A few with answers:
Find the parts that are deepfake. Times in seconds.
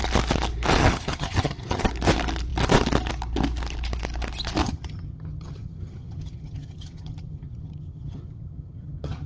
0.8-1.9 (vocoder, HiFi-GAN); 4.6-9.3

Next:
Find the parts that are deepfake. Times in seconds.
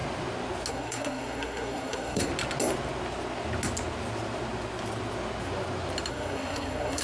0.7-2.3 (codec, SNAC); 6.1-7.0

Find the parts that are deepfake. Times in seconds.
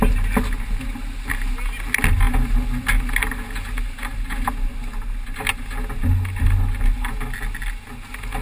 none